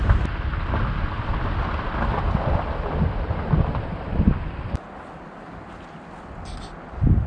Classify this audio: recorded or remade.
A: recorded